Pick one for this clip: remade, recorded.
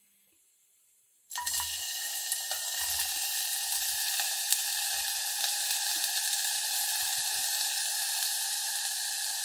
recorded